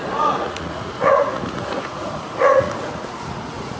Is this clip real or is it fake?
fake